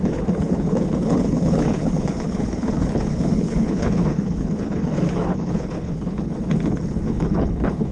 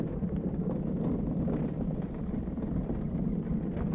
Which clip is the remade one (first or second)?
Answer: first